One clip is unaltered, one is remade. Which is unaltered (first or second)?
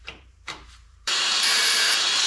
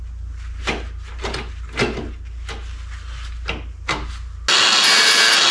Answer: second